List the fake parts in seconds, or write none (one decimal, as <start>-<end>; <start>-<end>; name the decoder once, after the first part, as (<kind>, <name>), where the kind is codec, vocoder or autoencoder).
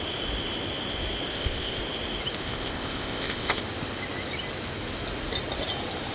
1.3-1.8 (codec, ZipCodec); 2.4-3.6